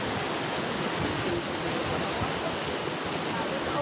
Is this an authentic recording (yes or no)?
yes